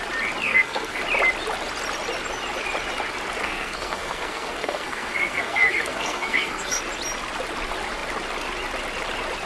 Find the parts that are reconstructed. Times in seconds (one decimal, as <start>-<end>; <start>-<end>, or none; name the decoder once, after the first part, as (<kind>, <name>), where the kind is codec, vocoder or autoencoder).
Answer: 0.4-1.0 (codec, SNAC); 3.4-6.8